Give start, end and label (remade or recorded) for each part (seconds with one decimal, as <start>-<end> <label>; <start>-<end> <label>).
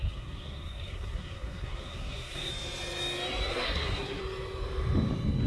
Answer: 0.0-2.5 remade; 2.5-3.5 recorded; 3.5-4.2 remade; 4.2-5.5 recorded